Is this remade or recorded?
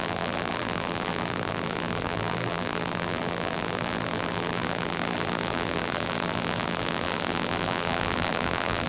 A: remade